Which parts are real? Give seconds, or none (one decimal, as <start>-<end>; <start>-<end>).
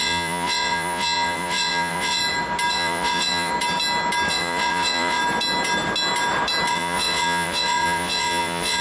2.2-2.7; 3.5-4.3; 5.2-6.7